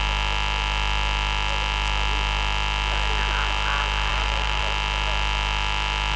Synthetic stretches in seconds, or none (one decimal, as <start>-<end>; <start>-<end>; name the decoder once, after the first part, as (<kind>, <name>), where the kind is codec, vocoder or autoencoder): 4.1-4.6 (vocoder, BigVGAN v2)